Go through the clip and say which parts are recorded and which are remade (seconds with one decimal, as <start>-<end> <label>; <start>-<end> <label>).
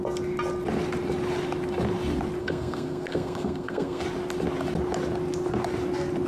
0.0-2.4 recorded; 2.4-4.0 remade; 4.0-6.3 recorded